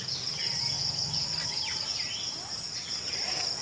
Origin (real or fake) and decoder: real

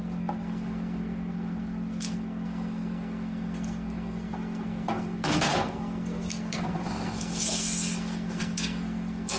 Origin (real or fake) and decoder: fake, codec, SNAC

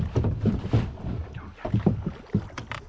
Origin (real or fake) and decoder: real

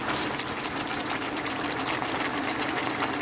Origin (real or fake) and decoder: real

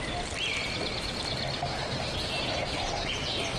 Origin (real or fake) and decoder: real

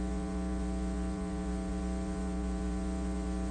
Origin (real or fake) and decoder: fake, vocoder, Vocos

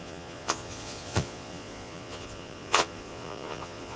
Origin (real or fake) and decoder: fake, vocoder, Vocos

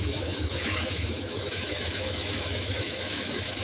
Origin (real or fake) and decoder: fake, autoencoder, DAC-VAE